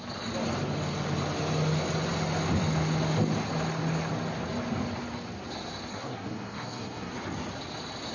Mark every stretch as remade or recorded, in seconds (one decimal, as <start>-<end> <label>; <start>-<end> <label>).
0.0-5.9 recorded; 5.9-7.1 remade; 7.1-8.1 recorded